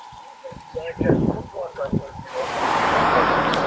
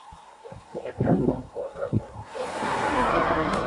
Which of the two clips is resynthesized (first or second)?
second